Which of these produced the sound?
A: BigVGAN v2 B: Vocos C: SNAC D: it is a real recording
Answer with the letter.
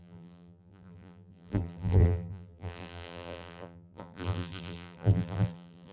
A